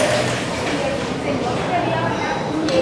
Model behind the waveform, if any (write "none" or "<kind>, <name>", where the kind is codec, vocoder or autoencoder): vocoder, BigVGAN v2